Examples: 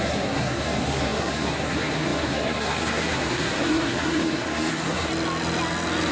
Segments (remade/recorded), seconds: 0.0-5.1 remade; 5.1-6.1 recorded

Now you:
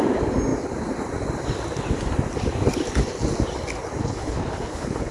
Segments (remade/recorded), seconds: 0.0-4.0 recorded; 4.0-5.1 remade

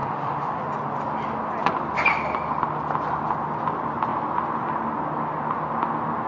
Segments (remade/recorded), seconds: 0.0-0.6 remade; 0.6-6.3 recorded

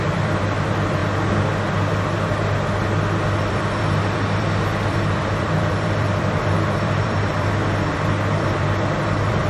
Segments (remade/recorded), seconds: 0.0-1.0 remade; 1.0-3.4 recorded; 3.4-9.5 remade

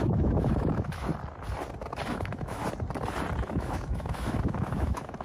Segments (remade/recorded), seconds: 0.0-1.1 remade; 1.1-2.1 recorded; 2.1-2.6 remade; 2.6-3.4 recorded; 3.4-5.2 remade